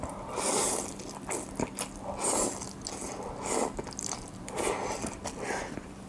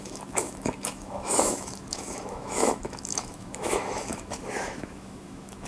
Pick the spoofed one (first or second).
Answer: second